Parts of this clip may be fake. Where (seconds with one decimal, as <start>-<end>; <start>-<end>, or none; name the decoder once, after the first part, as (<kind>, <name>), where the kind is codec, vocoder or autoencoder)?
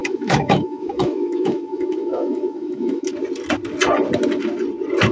0.0-3.1 (autoencoder, DAC-VAE)